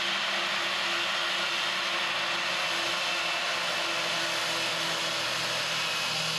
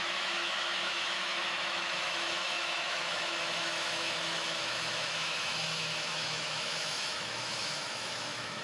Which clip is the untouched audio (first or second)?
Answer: first